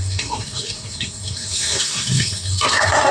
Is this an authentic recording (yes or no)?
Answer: no